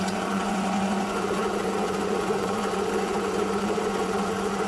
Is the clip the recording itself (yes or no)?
no